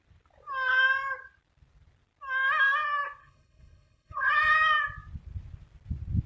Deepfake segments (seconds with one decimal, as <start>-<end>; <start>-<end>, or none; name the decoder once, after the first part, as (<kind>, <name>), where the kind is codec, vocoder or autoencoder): 3.2-4.3 (codec, HILCodec)